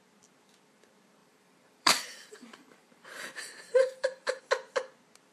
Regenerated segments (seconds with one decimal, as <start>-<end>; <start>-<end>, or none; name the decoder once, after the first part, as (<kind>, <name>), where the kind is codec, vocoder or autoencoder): 1.2-4.4 (vocoder, BigVGAN v2)